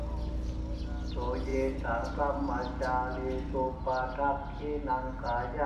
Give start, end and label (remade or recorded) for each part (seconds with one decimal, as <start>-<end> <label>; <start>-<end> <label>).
0.0-5.7 recorded